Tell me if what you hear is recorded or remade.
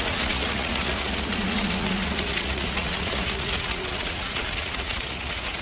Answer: remade